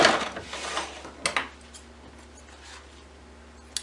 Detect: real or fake real